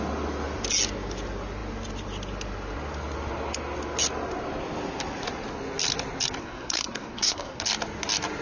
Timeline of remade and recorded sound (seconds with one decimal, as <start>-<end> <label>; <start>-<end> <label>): 0.0-6.4 recorded; 6.4-7.6 remade; 7.6-8.4 recorded